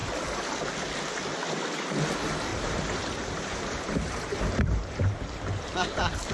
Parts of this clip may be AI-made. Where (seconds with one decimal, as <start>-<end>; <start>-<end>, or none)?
2.5-6.3